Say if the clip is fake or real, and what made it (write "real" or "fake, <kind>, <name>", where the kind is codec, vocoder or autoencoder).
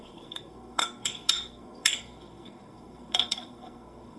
fake, codec, SNAC